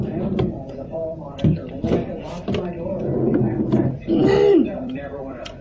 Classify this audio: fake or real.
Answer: fake